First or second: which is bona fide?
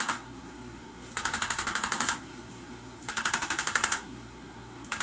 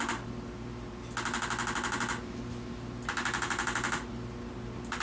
second